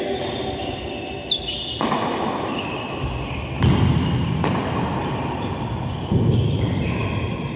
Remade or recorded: recorded